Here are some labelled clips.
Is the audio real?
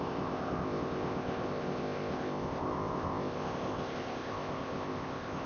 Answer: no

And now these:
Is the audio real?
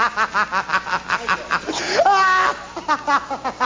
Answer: yes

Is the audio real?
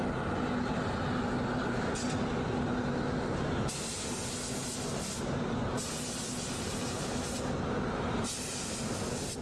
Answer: yes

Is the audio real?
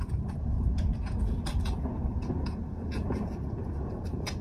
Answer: no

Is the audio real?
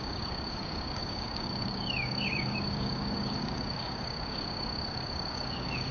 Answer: no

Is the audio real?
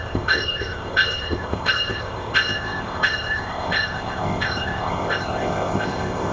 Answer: no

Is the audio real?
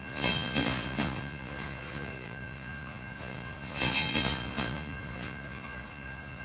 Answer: no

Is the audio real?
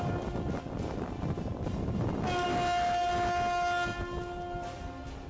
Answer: yes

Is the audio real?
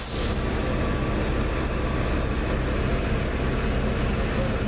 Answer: yes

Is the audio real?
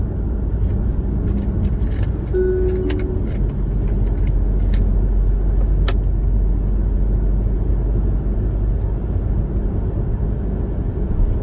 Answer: yes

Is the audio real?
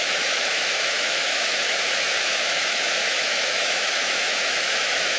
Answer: no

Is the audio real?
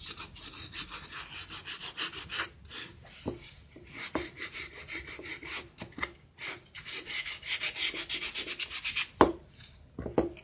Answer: yes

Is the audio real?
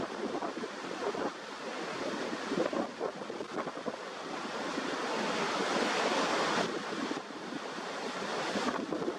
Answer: yes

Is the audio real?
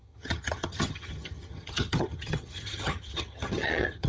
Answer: no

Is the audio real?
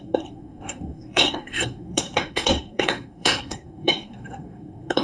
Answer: no